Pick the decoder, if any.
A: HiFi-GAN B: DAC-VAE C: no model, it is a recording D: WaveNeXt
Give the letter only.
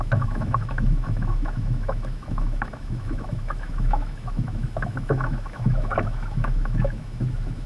B